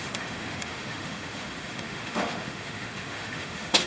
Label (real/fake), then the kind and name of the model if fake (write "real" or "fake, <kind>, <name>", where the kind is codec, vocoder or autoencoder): fake, autoencoder, DAC-VAE